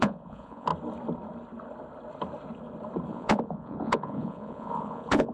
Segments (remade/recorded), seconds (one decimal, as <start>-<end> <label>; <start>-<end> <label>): 0.0-0.7 remade; 0.7-3.1 recorded; 3.1-5.3 remade